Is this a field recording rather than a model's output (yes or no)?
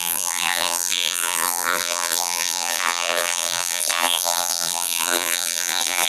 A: no